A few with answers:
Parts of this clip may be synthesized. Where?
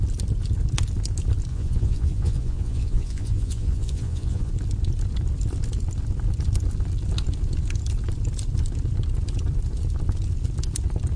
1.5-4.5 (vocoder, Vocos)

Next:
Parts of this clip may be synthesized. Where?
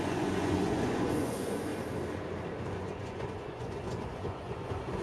0.0-1.7 (vocoder, Vocos); 2.6-5.0